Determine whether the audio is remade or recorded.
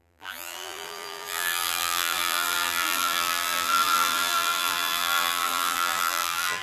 remade